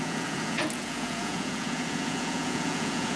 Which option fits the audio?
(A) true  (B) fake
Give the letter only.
B